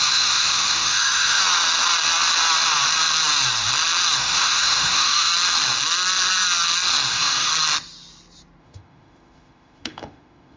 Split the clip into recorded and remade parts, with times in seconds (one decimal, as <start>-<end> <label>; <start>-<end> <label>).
0.0-1.4 remade; 1.4-4.2 recorded; 4.2-5.3 remade; 5.3-7.1 recorded; 7.1-7.5 remade; 7.5-8.6 recorded; 8.6-10.6 remade